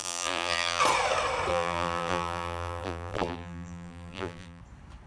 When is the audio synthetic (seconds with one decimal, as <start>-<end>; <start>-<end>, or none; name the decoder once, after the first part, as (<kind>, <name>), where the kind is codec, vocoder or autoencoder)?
0.0-0.8 (vocoder, BigVGAN v2); 1.5-4.6